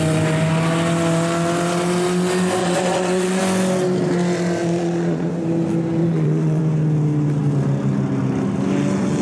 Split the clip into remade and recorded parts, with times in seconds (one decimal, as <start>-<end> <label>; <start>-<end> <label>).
0.0-2.6 recorded; 2.6-3.4 remade; 3.4-4.6 recorded; 4.6-5.3 remade; 5.3-6.0 recorded; 6.0-6.6 remade; 6.6-9.2 recorded